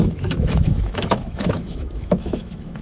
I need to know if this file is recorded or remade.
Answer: remade